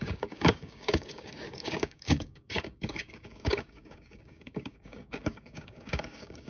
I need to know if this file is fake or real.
fake